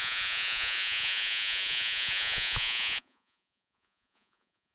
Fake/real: fake